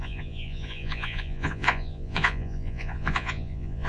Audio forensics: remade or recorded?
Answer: remade